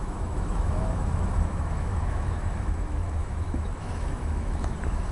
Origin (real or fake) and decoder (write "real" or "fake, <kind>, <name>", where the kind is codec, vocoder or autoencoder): fake, autoencoder, DAC-VAE